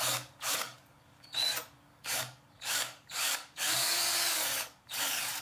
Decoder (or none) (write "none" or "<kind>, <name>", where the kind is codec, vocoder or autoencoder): codec, DAC